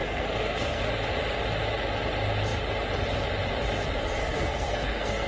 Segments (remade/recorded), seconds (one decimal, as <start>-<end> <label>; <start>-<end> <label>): 0.0-0.8 remade; 0.8-4.2 recorded; 4.2-5.3 remade